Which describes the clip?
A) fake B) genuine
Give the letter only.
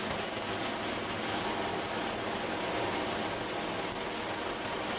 B